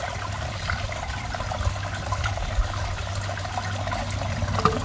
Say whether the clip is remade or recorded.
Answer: recorded